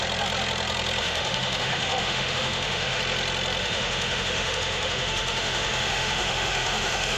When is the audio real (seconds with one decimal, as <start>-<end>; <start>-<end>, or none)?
0.0-1.0; 3.0-3.6